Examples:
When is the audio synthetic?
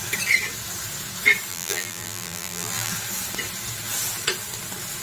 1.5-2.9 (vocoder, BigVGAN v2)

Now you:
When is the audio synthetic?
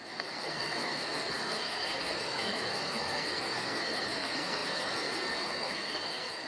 0.0-6.5 (codec, SNAC)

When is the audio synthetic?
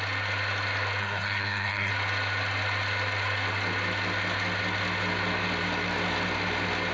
1.0-1.9 (codec, SNAC)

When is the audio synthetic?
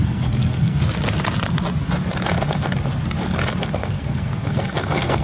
0.0-0.8 (codec, SNAC); 3.7-5.2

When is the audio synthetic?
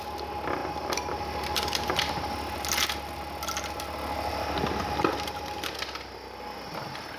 none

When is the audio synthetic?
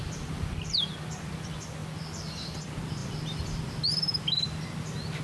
0.0-0.8 (vocoder, BigVGAN v2); 1.8-2.6; 3.0-3.8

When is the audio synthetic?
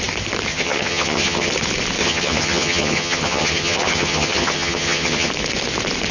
0.5-1.5 (vocoder, HiFi-GAN); 2.0-5.3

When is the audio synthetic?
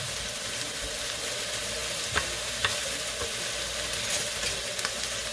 none